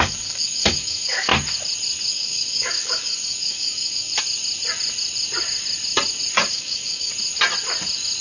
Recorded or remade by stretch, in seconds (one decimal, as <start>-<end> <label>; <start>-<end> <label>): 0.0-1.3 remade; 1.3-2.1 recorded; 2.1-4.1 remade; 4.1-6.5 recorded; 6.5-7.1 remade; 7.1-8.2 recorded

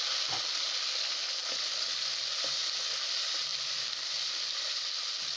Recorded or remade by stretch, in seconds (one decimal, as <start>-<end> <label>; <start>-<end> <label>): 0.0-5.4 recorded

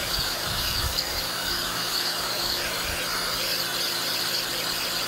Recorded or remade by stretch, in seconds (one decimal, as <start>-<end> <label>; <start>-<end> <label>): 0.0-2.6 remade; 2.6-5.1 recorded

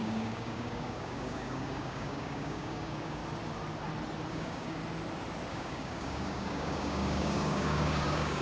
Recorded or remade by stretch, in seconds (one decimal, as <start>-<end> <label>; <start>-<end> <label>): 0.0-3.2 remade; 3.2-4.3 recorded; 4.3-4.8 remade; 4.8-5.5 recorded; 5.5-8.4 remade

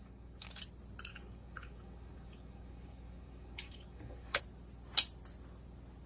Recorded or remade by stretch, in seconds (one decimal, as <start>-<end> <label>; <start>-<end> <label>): 0.0-0.6 remade; 0.6-1.1 recorded; 1.1-4.4 remade; 4.4-6.1 recorded

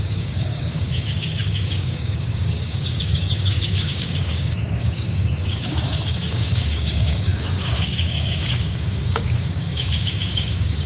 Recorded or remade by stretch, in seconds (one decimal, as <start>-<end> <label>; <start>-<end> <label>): 0.0-10.9 remade

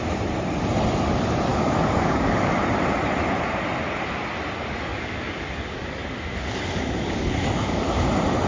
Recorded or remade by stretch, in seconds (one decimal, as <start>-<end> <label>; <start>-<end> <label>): 0.0-1.5 recorded; 1.5-2.5 remade; 2.5-4.9 recorded; 4.9-8.1 remade; 8.1-8.5 recorded

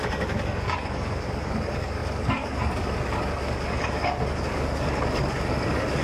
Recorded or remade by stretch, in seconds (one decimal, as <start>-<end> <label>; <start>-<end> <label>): 0.0-6.0 remade